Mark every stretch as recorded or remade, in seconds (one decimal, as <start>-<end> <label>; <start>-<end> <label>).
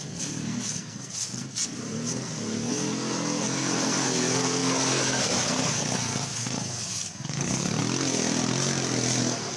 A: 0.0-7.8 remade; 7.8-9.2 recorded; 9.2-9.6 remade